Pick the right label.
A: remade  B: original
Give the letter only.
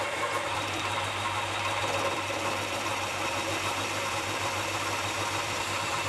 A